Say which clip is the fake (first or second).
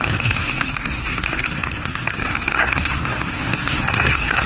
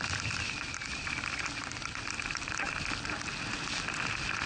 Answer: first